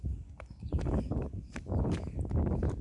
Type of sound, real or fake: fake